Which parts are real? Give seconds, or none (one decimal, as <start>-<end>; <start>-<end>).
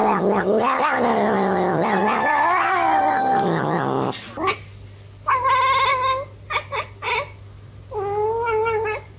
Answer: 0.8-9.2